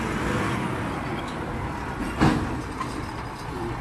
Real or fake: real